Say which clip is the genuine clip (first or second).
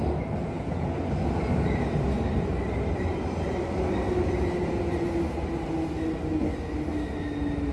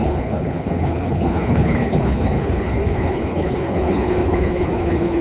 first